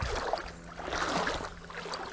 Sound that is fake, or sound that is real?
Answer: real